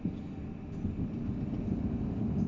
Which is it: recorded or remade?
recorded